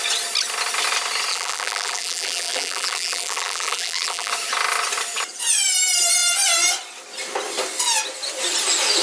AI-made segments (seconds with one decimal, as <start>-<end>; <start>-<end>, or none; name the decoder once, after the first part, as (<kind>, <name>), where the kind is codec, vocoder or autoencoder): 1.3-4.3 (vocoder, BigVGAN v2)